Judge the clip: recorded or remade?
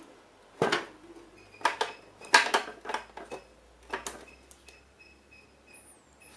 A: recorded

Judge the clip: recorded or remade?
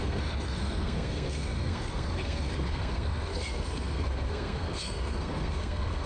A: remade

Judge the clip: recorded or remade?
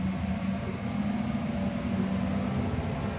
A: recorded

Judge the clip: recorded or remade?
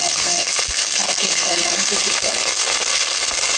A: remade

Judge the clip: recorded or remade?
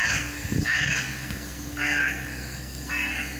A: remade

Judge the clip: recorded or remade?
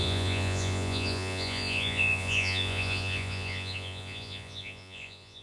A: remade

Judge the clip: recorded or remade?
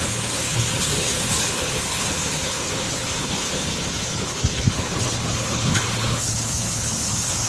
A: remade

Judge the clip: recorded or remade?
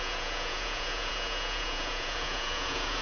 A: remade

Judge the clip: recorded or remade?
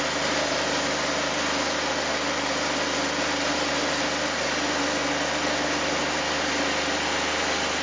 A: recorded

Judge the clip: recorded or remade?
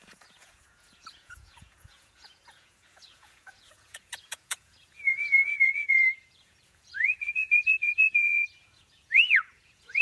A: remade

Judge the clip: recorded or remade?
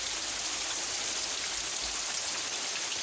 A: recorded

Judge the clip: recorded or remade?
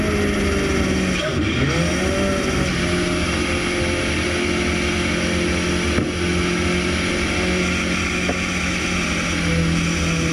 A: recorded